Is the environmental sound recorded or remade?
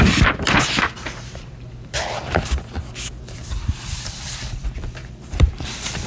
remade